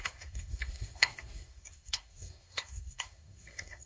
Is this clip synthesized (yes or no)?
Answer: yes